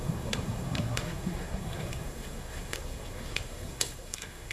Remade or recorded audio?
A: remade